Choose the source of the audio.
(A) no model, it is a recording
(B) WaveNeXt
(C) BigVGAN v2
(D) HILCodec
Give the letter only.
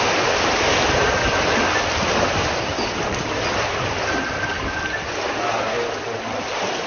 A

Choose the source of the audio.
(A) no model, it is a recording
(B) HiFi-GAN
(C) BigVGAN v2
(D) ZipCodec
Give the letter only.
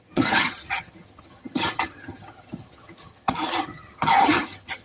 B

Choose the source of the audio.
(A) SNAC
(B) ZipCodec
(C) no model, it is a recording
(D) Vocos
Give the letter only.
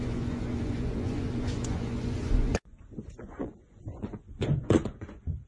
D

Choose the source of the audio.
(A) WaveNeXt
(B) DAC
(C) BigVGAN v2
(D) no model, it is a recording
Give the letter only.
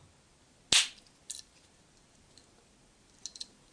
D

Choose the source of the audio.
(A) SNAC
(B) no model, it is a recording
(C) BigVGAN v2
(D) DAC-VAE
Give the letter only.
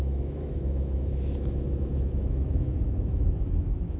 D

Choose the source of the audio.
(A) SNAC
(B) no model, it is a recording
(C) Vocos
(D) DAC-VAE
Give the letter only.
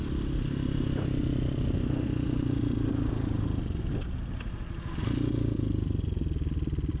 B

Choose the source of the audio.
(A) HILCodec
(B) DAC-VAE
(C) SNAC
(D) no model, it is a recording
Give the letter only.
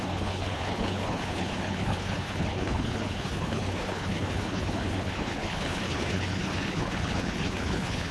A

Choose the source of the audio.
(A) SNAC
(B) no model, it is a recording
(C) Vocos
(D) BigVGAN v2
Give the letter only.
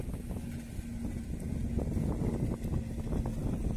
B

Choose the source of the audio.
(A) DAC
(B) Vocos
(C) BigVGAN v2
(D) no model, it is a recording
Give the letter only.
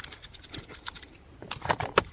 D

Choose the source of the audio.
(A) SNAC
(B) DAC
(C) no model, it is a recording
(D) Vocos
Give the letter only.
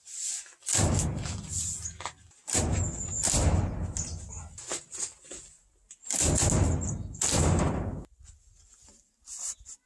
C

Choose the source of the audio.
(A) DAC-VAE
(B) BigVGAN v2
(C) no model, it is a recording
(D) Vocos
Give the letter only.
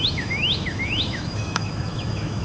A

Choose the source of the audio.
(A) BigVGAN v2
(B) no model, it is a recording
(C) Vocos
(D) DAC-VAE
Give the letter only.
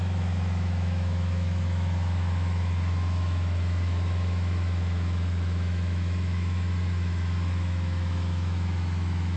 D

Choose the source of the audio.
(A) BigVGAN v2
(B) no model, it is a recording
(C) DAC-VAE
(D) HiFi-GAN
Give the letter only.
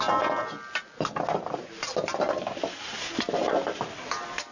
B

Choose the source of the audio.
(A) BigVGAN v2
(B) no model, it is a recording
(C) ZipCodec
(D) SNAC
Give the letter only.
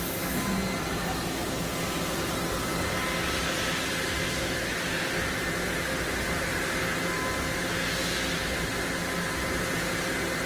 B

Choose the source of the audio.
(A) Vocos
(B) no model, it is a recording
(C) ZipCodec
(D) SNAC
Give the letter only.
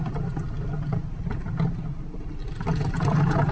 B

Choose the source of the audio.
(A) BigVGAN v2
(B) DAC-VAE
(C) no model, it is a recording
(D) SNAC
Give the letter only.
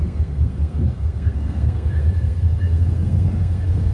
D